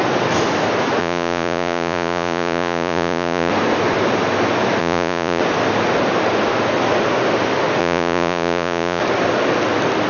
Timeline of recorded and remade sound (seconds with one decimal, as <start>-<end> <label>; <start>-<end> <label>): 0.0-1.0 recorded; 1.0-3.5 remade; 3.5-4.8 recorded; 4.8-5.4 remade; 5.4-7.8 recorded; 7.8-9.0 remade; 9.0-10.1 recorded